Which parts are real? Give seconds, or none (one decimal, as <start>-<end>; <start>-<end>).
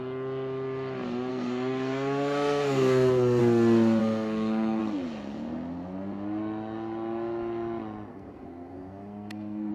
0.0-1.3; 3.4-4.0; 4.8-8.1